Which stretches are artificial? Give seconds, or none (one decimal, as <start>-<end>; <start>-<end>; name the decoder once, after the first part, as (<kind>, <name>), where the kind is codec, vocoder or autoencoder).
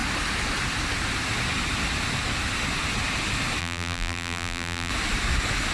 3.6-4.9 (vocoder, BigVGAN v2)